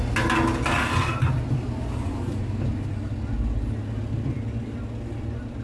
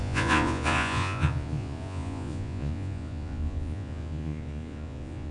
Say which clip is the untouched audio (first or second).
first